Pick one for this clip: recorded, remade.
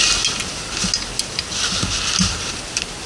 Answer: recorded